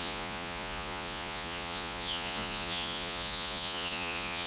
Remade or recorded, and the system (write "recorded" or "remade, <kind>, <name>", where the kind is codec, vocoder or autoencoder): remade, vocoder, Vocos